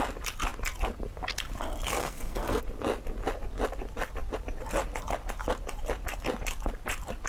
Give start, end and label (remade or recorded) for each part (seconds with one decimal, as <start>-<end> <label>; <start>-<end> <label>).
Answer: 0.0-2.0 recorded; 2.0-2.6 remade; 2.6-7.3 recorded